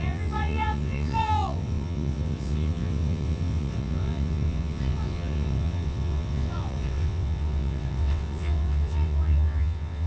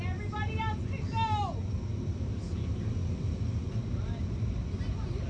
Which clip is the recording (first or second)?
second